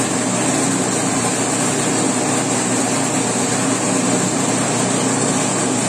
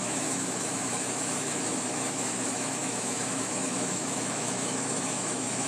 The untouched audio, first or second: first